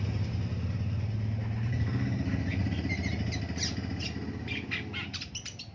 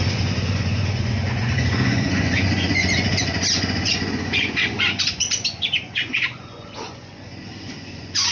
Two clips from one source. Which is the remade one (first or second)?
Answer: second